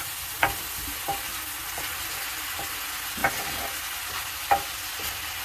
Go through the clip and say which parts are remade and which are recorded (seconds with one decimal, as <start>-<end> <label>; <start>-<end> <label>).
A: 0.0-5.4 recorded